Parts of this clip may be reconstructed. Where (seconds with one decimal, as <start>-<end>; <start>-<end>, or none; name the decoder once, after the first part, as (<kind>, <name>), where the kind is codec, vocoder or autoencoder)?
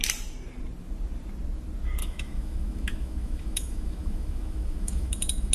2.0-5.5 (autoencoder, DAC-VAE)